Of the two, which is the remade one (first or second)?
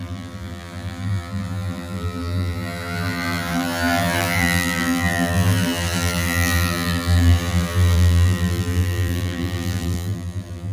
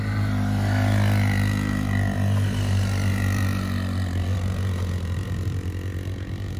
first